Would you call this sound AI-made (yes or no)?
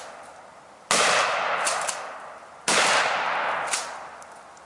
no